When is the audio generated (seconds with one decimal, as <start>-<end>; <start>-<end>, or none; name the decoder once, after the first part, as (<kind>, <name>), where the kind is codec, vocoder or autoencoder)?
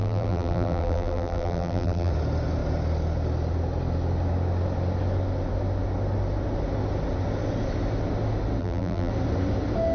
0.0-2.1 (vocoder, BigVGAN v2); 8.6-9.1